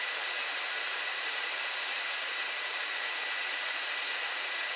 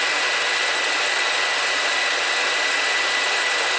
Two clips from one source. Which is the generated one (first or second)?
first